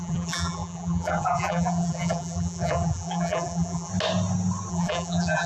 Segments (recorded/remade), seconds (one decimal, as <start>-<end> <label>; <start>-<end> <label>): 0.0-3.9 remade; 3.9-4.7 recorded; 4.7-5.5 remade